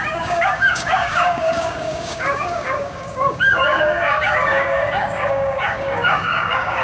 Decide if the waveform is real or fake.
fake